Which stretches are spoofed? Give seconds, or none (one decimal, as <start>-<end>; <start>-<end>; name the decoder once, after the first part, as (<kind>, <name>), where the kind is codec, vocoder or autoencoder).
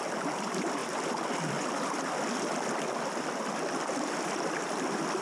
0.0-5.2 (vocoder, BigVGAN v2)